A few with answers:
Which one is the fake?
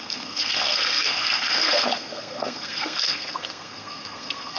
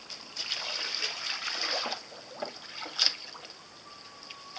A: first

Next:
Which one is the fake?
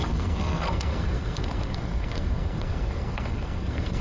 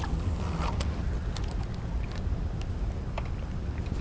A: first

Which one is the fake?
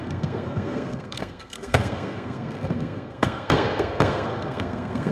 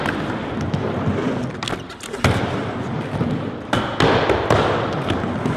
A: first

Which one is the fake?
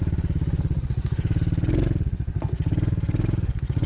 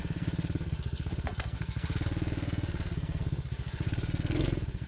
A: second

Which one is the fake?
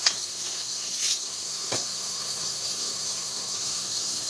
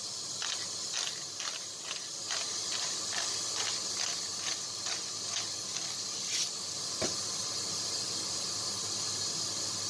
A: first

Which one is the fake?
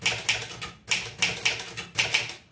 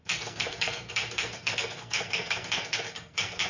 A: second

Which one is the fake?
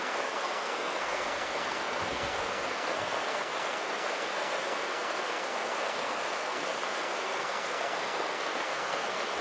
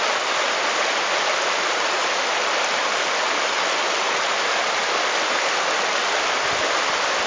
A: first